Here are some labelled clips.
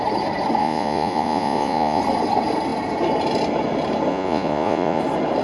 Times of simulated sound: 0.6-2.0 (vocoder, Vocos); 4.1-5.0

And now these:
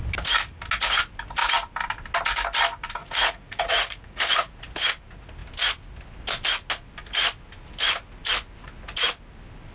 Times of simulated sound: 3.0-4.6 (vocoder, Vocos)

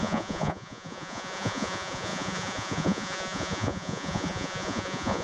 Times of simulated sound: 0.0-5.2 (vocoder, Vocos)

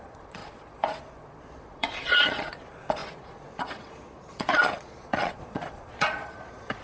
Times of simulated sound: 0.0-6.8 (vocoder, Vocos)

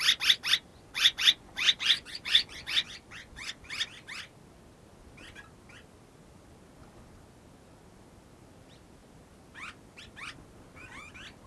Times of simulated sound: 0.7-3.7 (vocoder, Vocos)

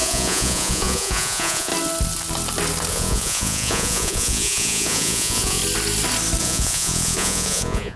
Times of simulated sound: 0.0-1.7 (vocoder, Vocos); 2.9-5.6; 6.4-8.0